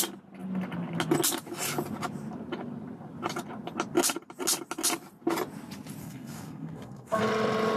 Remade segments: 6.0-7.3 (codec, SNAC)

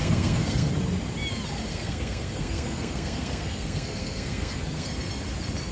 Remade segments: 0.0-0.7 (codec, SNAC); 1.7-4.9

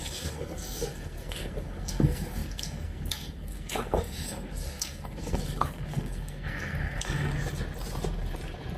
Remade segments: 0.0-7.3 (codec, SNAC)

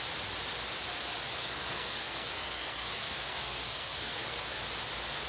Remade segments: 1.4-4.6 (codec, SNAC)

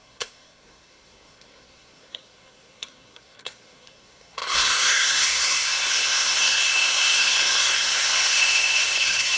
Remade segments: 0.0-9.4 (codec, SNAC)

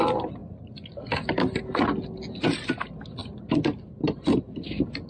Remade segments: none